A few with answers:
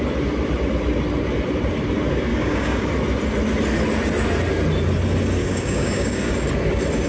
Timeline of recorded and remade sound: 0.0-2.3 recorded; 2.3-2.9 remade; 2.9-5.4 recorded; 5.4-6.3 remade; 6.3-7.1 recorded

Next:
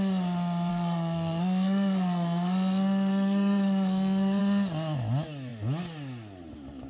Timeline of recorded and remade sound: 0.0-0.7 recorded; 0.7-4.4 remade; 4.4-6.9 recorded

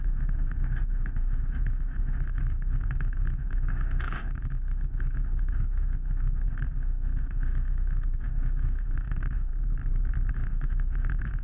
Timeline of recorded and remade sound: 0.0-9.5 remade; 9.5-10.3 recorded; 10.3-11.4 remade

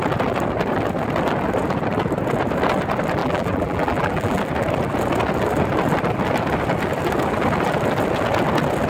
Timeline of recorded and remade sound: 0.0-3.2 recorded; 3.2-4.4 remade; 4.4-8.9 recorded

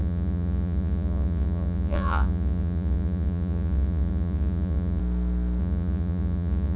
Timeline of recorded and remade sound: 0.0-5.0 remade; 5.0-5.6 recorded; 5.6-6.8 remade